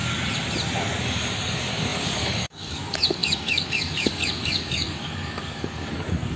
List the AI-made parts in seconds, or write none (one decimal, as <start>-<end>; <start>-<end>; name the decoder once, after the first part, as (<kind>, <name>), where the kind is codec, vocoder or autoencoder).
1.0-6.4 (codec, DAC)